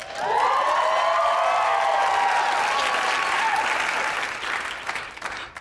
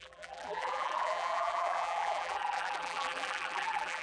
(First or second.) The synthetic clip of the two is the second